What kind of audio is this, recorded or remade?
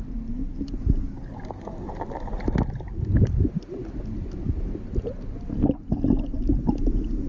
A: recorded